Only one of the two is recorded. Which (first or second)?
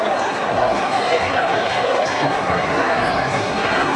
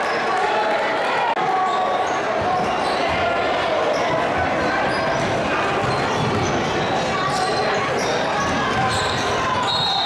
second